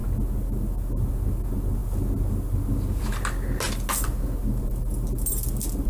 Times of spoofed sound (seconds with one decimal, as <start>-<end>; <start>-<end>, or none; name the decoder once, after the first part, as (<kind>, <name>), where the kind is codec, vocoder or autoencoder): none

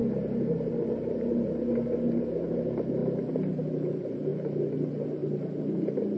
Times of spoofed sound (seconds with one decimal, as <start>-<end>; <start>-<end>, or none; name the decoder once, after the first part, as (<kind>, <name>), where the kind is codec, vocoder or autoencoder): none